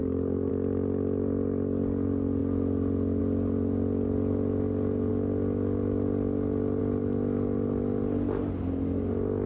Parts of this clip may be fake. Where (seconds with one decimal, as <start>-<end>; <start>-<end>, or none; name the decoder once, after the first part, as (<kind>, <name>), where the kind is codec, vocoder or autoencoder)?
0.0-0.5 (codec, DAC)